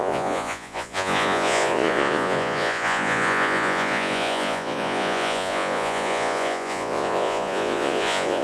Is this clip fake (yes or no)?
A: yes